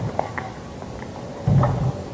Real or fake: real